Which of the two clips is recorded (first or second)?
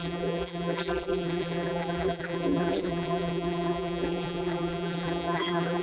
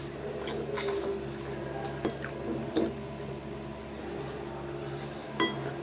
second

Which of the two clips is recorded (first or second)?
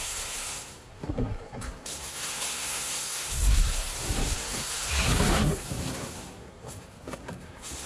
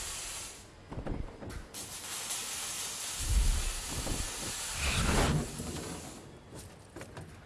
second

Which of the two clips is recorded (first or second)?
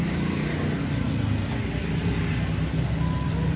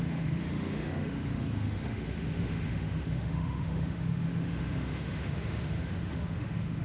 first